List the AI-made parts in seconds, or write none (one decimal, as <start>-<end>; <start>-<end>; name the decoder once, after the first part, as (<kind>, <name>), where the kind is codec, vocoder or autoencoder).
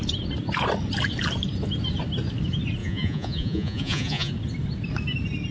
2.8-4.3 (vocoder, Vocos)